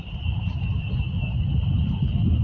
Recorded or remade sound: recorded